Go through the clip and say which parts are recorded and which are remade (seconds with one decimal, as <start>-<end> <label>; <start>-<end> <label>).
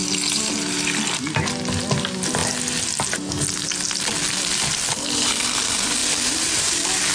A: 0.0-7.1 recorded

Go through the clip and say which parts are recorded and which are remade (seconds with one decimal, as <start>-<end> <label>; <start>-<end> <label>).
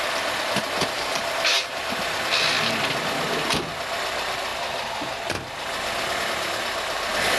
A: 0.0-7.4 recorded